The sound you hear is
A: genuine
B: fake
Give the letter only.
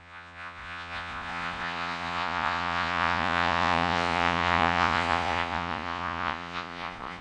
B